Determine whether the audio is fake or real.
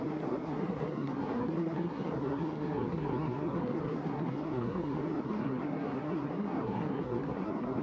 fake